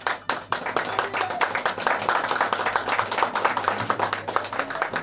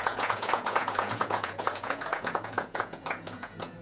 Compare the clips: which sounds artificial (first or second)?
second